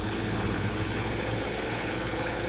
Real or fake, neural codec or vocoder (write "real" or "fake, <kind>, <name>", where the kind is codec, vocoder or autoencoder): fake, codec, HILCodec